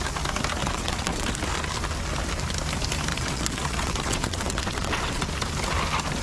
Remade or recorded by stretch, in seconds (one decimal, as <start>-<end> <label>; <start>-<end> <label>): 0.0-0.6 recorded; 0.6-1.3 remade; 1.3-3.1 recorded; 3.1-5.3 remade; 5.3-6.2 recorded